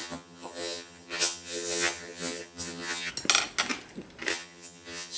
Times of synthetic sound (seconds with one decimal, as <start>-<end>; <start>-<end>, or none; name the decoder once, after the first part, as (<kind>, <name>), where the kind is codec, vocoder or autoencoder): 0.0-3.1 (vocoder, HiFi-GAN); 4.3-5.2